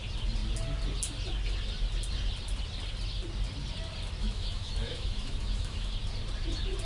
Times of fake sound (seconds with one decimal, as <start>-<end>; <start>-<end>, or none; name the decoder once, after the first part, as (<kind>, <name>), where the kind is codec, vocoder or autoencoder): 4.2-5.9 (autoencoder, DAC-VAE)